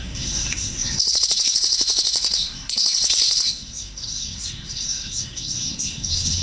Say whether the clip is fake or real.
fake